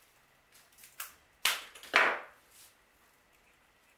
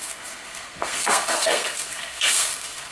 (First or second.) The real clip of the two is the first